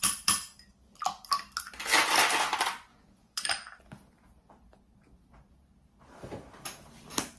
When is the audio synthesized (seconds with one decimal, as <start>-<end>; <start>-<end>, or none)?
2.9-3.5